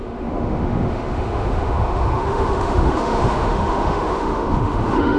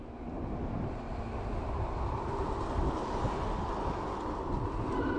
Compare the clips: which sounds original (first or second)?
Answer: second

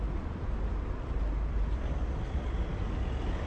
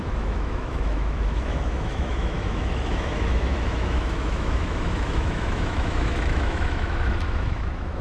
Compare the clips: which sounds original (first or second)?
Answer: first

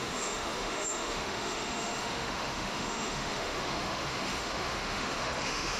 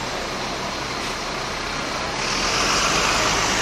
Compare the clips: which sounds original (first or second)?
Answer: second